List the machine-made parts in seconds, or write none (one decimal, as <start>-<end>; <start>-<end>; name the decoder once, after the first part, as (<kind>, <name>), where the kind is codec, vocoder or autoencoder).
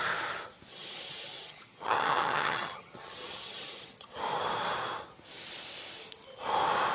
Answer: 0.7-4.1 (vocoder, HiFi-GAN)